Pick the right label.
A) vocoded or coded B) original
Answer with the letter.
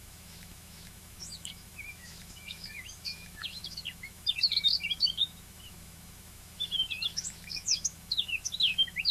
A